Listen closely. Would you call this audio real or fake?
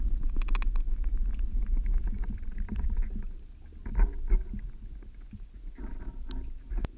real